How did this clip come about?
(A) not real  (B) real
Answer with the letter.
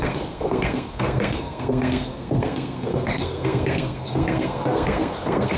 A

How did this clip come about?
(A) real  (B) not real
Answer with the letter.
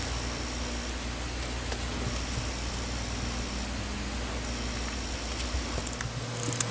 A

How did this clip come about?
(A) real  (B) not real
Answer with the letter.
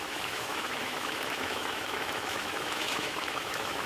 B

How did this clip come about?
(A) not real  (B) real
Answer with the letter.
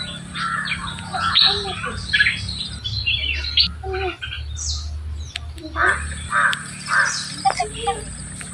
A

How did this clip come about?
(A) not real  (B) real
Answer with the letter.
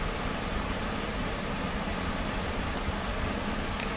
A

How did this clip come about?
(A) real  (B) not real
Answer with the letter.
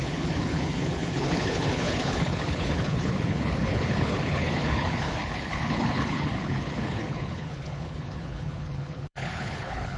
B